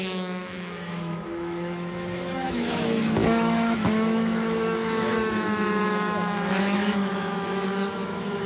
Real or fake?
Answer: fake